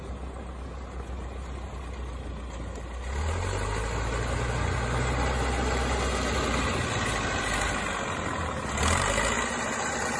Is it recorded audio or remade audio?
recorded